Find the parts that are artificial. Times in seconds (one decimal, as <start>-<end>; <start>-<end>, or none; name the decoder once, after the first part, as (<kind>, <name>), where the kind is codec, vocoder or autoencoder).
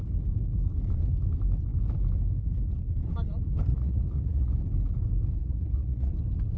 3.7-4.5 (vocoder, Vocos); 5.4-6.1